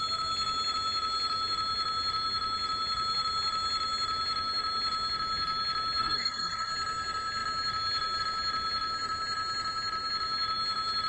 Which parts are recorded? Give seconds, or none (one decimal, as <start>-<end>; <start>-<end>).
0.0-6.0; 6.7-11.1